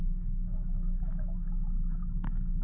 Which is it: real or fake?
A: fake